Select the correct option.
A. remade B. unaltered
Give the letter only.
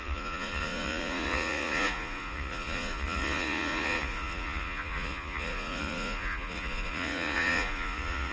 A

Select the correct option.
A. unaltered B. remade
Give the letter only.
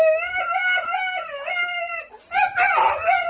A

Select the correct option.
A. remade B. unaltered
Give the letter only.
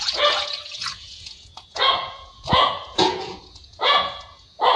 A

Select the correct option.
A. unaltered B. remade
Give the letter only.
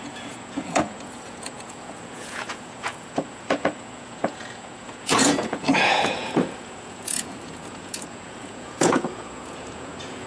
B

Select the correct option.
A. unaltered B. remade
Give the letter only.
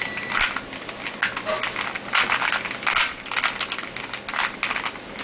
A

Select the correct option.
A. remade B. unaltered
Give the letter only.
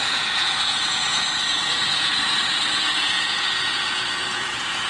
A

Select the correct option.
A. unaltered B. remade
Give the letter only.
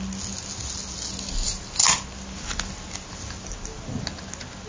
A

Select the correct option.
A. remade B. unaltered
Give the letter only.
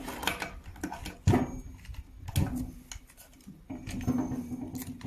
B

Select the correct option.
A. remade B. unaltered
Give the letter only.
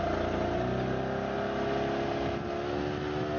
B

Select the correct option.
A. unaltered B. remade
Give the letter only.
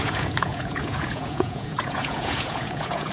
B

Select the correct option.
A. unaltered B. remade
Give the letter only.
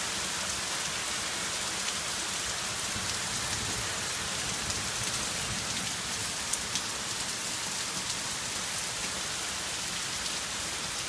A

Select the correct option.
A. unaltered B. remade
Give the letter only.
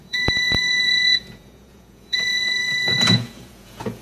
B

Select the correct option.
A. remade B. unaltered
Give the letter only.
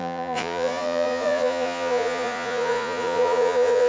A